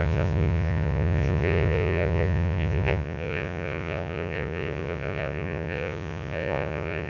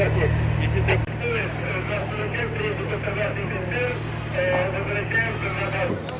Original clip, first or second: second